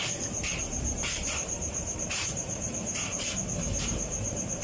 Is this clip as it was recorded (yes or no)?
no